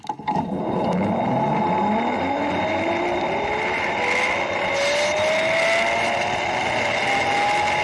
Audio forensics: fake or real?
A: real